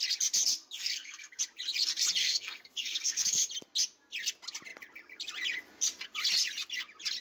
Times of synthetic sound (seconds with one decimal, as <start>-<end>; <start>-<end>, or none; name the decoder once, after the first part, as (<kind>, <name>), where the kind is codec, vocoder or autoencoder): 0.5-1.4 (codec, SNAC); 2.2-3.5